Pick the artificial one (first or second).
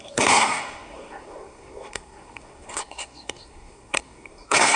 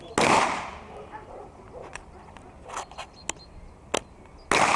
first